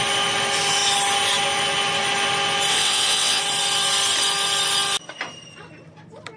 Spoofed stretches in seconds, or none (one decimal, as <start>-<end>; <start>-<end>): 2.7-3.4